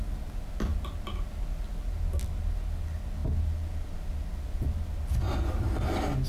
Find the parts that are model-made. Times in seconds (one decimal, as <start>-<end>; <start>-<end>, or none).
none